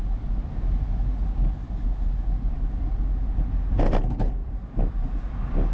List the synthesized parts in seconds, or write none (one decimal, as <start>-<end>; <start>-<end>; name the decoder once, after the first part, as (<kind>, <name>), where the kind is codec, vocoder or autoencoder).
4.4-5.3 (vocoder, BigVGAN v2)